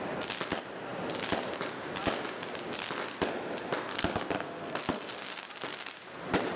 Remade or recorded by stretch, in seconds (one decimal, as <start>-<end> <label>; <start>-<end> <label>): 0.0-3.8 recorded; 3.8-5.1 remade; 5.1-6.6 recorded